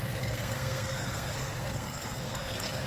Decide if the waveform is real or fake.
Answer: fake